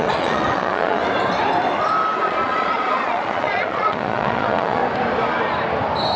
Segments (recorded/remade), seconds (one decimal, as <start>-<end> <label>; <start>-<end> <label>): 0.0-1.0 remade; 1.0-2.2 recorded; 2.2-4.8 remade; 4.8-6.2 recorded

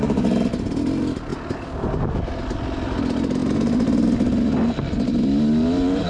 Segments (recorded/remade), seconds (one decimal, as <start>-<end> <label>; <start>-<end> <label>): 0.0-6.1 recorded

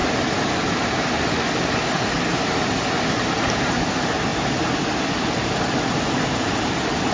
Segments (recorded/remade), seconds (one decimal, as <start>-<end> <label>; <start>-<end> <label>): 0.0-7.1 recorded

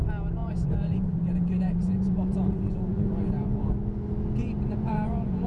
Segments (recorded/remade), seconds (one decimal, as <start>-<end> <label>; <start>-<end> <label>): 0.0-0.4 recorded; 0.4-3.7 remade; 3.7-4.4 recorded; 4.4-5.5 remade

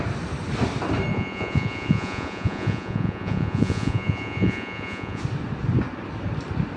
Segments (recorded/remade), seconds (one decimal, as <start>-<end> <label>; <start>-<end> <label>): 0.0-1.1 recorded; 1.1-5.2 remade; 5.2-6.8 recorded

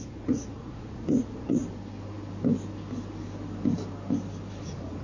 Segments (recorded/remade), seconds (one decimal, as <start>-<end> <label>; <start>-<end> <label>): 0.0-1.6 remade; 1.6-4.6 recorded; 4.6-5.0 remade

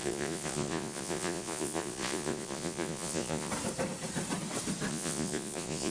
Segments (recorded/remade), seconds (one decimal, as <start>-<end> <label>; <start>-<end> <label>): 0.0-3.5 remade; 3.5-4.9 recorded; 4.9-5.9 remade

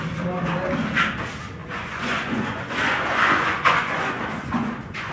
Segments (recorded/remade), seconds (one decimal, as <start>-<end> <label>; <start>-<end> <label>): 0.0-1.6 recorded; 1.6-5.1 remade